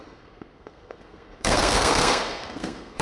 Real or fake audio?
fake